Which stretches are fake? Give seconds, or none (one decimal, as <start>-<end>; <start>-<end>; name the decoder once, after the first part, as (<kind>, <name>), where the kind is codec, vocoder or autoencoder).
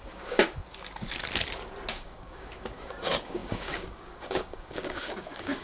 0.0-0.4 (codec, DAC); 1.9-5.6